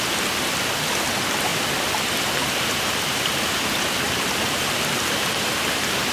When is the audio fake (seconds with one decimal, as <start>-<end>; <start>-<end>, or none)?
1.5-5.2